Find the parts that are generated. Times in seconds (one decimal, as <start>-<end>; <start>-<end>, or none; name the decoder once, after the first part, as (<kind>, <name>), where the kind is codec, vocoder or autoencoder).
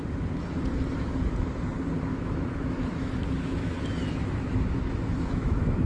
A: 2.1-5.9 (autoencoder, DAC-VAE)